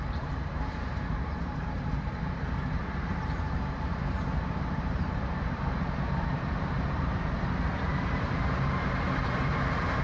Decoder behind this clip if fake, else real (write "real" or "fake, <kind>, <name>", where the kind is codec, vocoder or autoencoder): fake, vocoder, BigVGAN v2